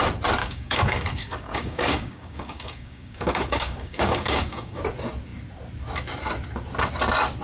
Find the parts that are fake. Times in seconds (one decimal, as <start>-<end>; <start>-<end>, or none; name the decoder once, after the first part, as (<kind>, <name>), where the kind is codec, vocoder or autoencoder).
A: 0.4-4.8 (codec, DAC)